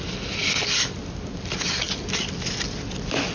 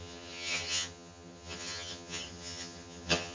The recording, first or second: first